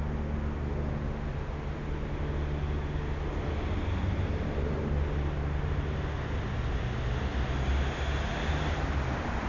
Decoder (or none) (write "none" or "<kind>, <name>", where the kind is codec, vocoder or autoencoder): none